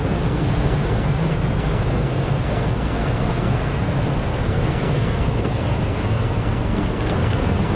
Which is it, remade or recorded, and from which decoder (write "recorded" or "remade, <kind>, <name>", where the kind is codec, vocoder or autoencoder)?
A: remade, codec, SNAC